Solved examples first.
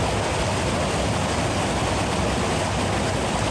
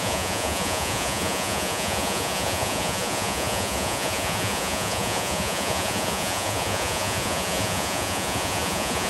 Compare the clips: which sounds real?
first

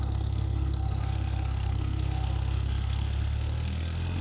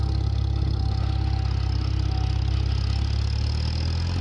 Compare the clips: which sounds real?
second